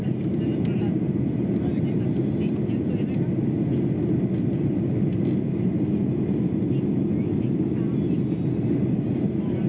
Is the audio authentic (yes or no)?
yes